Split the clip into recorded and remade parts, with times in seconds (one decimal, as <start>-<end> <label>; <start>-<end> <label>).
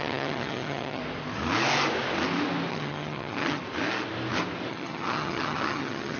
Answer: 0.0-1.0 remade; 1.0-2.7 recorded; 2.7-3.6 remade; 3.6-4.7 recorded; 4.7-6.2 remade